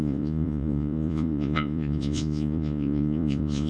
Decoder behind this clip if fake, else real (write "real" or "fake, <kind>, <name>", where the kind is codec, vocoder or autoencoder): fake, vocoder, Vocos